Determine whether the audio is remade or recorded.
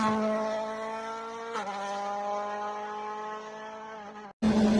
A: recorded